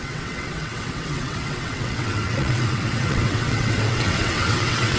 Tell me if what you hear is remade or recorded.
remade